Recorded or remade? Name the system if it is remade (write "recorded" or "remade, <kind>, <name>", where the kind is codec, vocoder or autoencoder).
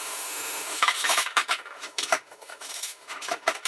remade, autoencoder, DAC-VAE